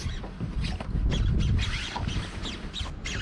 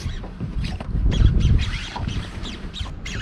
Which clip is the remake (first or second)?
second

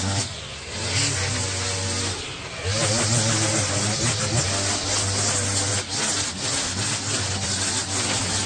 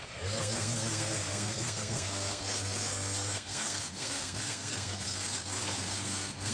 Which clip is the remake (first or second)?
second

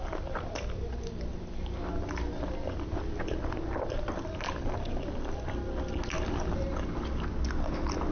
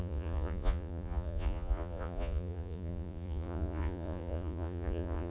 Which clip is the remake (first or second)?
second